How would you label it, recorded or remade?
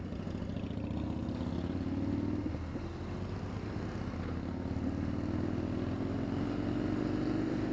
recorded